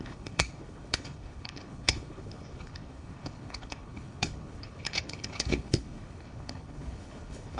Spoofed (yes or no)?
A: yes